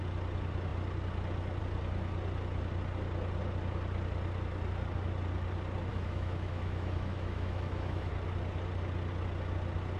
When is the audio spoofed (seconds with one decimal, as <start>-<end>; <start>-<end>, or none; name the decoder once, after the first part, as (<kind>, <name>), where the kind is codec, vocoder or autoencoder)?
5.9-8.1 (autoencoder, DAC-VAE)